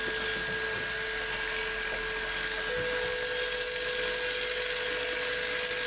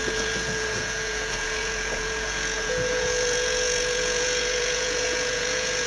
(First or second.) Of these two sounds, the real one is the first